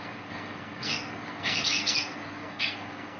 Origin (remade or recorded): remade